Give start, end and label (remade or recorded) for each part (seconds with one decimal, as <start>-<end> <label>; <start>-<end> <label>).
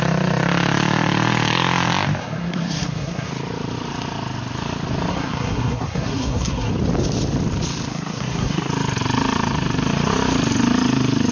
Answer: 0.0-2.2 recorded; 2.2-3.3 remade; 3.3-5.1 recorded; 5.1-6.7 remade; 6.7-7.9 recorded; 7.9-8.7 remade; 8.7-11.3 recorded